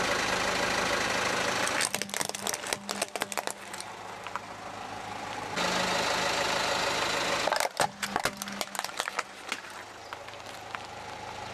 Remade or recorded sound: recorded